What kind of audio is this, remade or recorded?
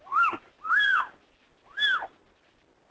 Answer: recorded